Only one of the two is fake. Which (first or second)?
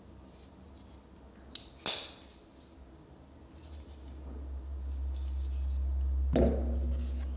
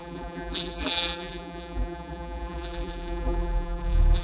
second